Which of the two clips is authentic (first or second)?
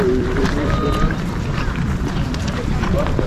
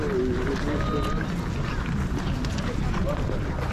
second